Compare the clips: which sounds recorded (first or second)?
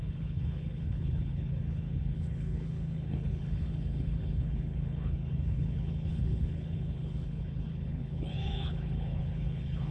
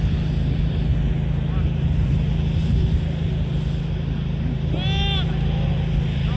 second